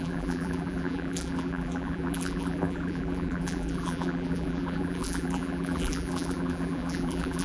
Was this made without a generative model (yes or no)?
no